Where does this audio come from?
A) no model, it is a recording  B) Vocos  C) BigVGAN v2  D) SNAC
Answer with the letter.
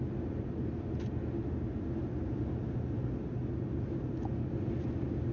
A